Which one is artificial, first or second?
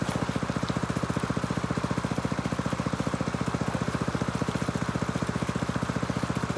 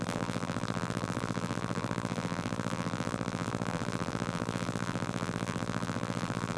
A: second